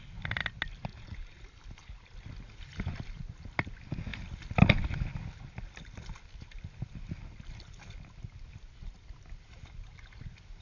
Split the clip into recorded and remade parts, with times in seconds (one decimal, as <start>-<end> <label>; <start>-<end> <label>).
0.0-10.6 recorded